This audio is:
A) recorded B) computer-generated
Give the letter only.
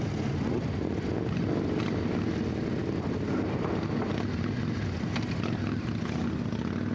A